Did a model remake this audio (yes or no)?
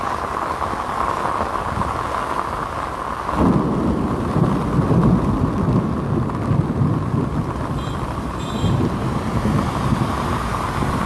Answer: no